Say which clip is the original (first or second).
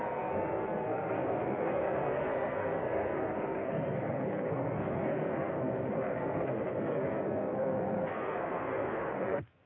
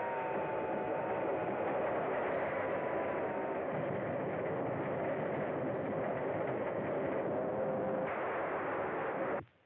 second